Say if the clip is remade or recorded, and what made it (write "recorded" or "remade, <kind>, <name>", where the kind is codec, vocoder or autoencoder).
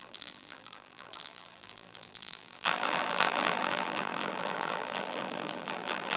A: remade, vocoder, BigVGAN v2